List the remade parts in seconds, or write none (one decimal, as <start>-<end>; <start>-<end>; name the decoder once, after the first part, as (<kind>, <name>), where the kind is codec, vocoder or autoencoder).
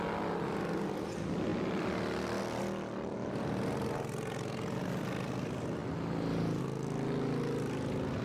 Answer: none